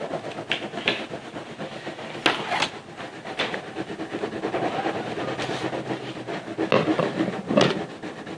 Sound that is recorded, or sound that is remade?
recorded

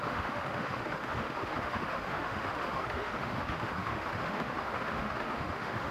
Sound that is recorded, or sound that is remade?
remade